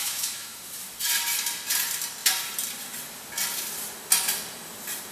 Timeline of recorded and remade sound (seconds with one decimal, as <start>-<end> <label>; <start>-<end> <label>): 0.0-0.6 remade; 0.6-5.1 recorded